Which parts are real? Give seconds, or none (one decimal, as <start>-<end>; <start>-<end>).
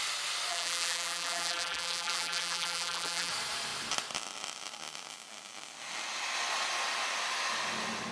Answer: 0.0-0.5; 3.3-8.1